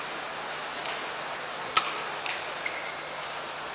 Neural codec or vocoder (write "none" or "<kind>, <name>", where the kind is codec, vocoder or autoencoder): none